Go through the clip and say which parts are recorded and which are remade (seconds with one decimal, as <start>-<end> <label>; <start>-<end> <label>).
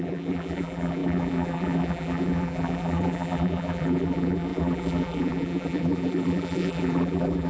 0.0-7.5 remade